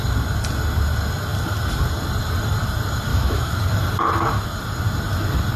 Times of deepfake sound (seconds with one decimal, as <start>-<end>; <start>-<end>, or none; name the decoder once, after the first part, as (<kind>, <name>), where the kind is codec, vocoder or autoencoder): 3.1-3.6 (autoencoder, DAC-VAE)

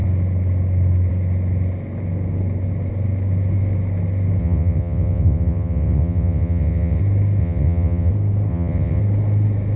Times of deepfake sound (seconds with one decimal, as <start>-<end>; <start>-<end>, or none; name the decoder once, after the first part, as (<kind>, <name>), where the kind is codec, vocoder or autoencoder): 4.4-7.0 (vocoder, WaveNeXt); 7.4-8.1; 8.5-9.0